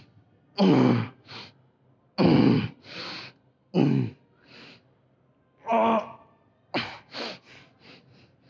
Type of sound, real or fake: real